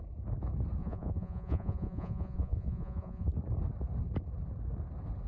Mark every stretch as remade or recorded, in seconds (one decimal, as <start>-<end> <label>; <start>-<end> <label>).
0.0-0.8 recorded; 0.8-3.3 remade; 3.3-5.3 recorded